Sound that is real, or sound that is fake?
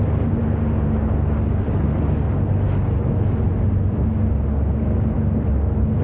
real